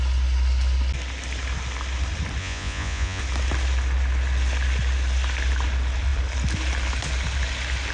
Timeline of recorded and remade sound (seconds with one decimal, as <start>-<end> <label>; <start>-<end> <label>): 0.0-2.4 recorded; 2.4-3.2 remade; 3.2-7.9 recorded